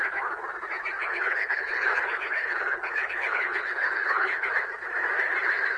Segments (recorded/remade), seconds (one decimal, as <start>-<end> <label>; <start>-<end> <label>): 0.0-1.0 recorded; 1.0-4.5 remade; 4.5-5.8 recorded